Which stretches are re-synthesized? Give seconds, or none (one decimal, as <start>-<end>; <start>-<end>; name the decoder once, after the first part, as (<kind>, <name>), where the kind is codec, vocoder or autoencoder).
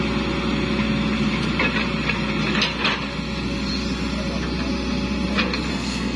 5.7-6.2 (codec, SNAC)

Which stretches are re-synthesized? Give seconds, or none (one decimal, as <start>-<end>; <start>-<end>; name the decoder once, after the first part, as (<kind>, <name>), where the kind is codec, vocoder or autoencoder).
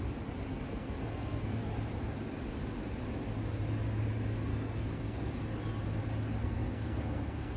0.5-1.6 (codec, SNAC); 4.5-5.3; 6.4-7.6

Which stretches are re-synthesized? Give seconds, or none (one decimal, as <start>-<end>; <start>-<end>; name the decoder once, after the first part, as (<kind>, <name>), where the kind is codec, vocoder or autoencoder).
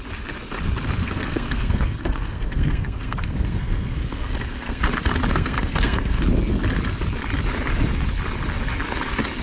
1.0-4.8 (codec, SNAC); 5.3-6.2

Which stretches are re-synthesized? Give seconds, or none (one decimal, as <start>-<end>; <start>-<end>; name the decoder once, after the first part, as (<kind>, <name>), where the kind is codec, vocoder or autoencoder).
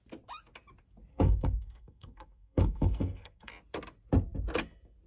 1.1-3.5 (codec, SNAC)